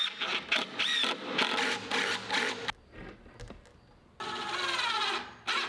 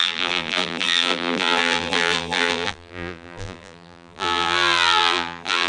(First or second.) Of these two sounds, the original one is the first